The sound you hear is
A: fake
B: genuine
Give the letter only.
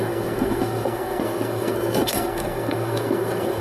A